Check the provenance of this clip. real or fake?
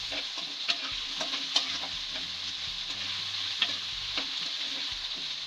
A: real